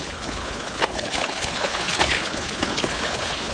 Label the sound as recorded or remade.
remade